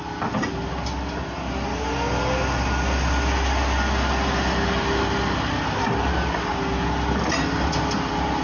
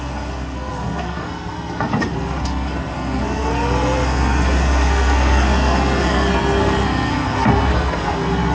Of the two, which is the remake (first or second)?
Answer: second